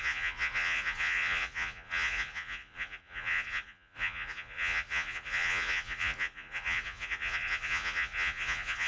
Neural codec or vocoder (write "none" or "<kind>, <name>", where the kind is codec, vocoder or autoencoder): vocoder, Vocos